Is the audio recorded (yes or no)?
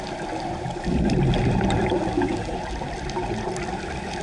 yes